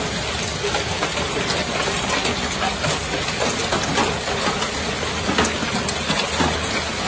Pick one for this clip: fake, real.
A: real